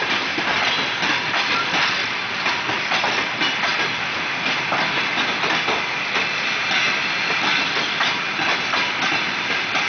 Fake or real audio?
real